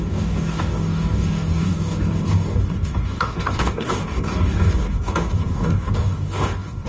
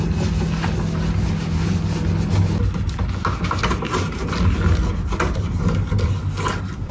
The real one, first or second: second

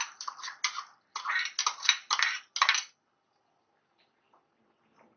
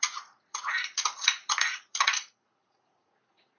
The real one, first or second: first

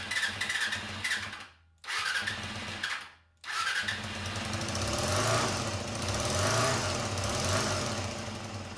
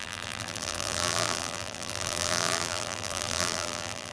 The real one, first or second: first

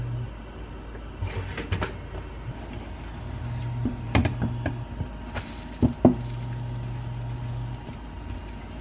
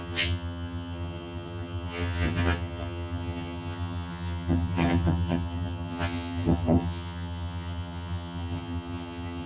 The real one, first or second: first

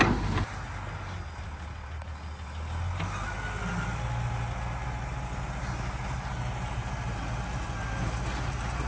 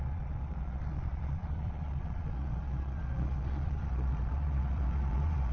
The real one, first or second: first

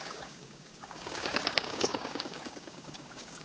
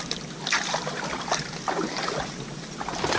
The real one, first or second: second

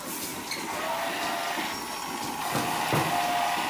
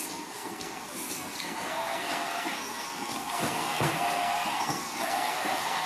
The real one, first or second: first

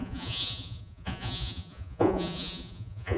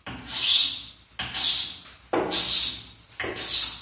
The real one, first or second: second